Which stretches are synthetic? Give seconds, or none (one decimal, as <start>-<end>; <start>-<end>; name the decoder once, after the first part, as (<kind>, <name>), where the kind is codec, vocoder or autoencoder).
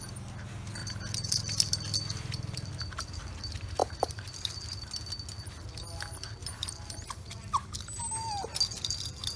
0.8-3.4 (vocoder, BigVGAN v2); 3.8-4.9; 6.4-7.8